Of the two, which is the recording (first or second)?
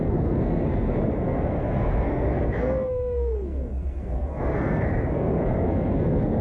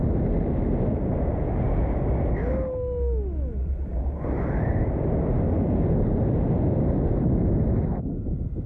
second